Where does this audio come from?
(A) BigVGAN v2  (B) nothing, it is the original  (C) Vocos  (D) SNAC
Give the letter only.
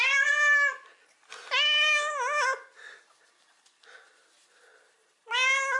B